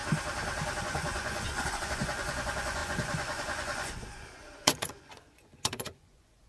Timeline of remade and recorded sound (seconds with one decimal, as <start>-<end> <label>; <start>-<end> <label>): 0.0-0.8 recorded; 0.8-6.5 remade